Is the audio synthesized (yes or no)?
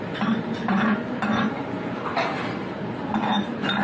yes